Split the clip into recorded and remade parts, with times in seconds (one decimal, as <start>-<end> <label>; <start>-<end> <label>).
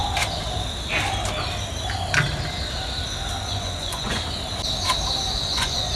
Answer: 0.0-3.4 recorded; 3.4-4.2 remade; 4.2-5.5 recorded; 5.5-6.0 remade